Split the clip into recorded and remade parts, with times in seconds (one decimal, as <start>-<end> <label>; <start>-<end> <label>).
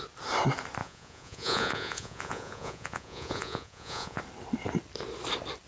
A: 0.0-0.8 recorded; 0.8-4.2 remade; 4.2-5.7 recorded